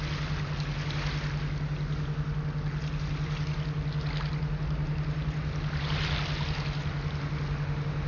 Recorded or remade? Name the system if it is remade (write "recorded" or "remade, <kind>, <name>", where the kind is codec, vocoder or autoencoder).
recorded